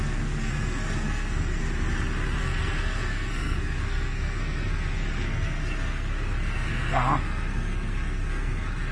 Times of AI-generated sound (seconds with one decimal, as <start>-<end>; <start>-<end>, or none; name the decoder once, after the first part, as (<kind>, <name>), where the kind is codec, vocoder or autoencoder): 0.0-1.6 (codec, SNAC); 2.4-8.9